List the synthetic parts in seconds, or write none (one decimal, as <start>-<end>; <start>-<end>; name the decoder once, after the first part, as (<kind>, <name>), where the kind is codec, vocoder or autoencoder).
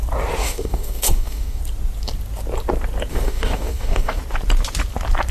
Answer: 0.4-1.6 (codec, DAC); 3.1-4.2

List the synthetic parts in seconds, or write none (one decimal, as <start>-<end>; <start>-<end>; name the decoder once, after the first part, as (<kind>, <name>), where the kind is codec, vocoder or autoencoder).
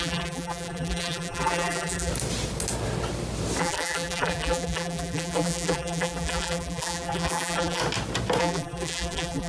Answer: 0.0-2.1 (vocoder, BigVGAN v2); 3.6-7.8; 8.4-9.5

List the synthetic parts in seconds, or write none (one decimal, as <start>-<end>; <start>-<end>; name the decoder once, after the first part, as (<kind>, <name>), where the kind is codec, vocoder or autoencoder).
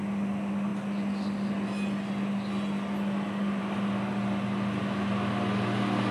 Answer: none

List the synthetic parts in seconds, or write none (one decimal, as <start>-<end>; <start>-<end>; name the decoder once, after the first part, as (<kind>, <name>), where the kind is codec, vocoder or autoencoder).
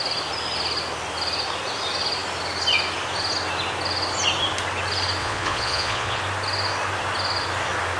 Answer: 5.2-6.2 (vocoder, Vocos)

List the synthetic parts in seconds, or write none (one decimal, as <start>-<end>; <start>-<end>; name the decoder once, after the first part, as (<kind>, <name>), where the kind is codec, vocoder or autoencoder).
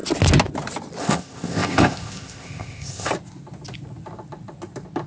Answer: 1.0-3.1 (codec, ZipCodec)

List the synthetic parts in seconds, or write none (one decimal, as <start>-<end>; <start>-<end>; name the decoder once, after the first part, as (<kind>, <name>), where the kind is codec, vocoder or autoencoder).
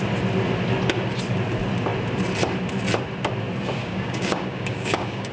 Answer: 3.8-5.3 (codec, DAC)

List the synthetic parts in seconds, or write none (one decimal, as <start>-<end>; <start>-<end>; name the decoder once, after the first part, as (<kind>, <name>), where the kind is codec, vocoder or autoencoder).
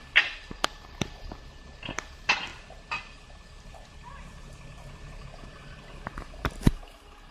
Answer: 0.0-7.3 (vocoder, BigVGAN v2)